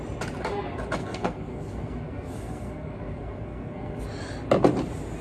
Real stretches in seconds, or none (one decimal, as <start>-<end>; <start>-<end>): 0.0-1.0; 4.0-5.2